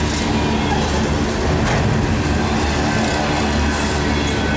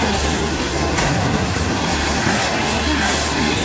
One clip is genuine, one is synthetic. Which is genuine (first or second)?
first